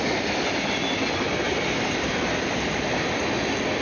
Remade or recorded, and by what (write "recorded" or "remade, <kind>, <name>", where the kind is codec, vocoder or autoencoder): recorded